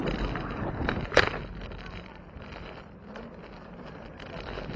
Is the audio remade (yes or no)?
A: yes